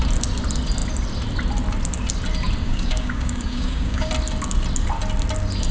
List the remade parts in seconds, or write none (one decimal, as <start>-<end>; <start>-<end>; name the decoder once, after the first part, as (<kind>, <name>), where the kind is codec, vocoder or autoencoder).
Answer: 2.6-4.1 (codec, DAC)

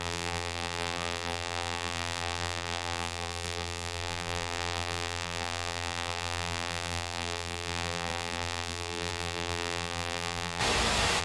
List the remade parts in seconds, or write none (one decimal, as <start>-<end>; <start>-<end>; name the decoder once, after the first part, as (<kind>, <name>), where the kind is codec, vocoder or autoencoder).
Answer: 0.0-10.6 (vocoder, BigVGAN v2)

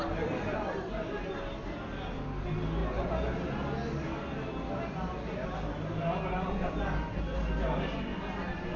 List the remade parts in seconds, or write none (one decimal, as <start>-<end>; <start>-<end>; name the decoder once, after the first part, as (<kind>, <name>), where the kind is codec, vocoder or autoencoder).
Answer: none

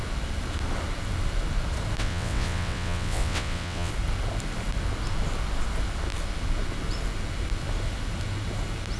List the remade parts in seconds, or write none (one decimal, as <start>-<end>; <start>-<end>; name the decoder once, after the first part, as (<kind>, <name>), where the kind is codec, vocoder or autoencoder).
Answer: 2.0-3.9 (vocoder, WaveNeXt)

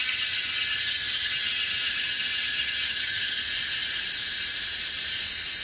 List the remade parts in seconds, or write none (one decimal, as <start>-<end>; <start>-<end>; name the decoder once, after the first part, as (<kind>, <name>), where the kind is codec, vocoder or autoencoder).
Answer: 0.0-3.4 (vocoder, HiFi-GAN)

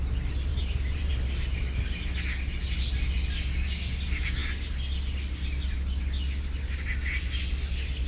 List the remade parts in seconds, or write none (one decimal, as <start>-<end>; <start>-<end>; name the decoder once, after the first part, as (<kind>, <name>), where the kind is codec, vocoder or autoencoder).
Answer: 0.5-1.1 (vocoder, BigVGAN v2)

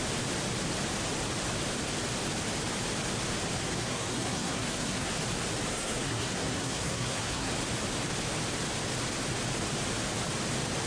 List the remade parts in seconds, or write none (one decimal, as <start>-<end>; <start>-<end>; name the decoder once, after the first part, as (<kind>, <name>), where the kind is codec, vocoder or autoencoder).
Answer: 3.6-5.1 (codec, SNAC); 5.7-7.5

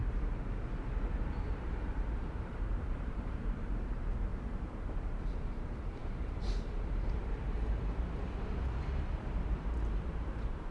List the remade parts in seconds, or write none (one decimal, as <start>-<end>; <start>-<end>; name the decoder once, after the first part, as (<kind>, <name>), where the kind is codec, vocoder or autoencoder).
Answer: 1.2-4.3 (vocoder, BigVGAN v2); 5.0-10.7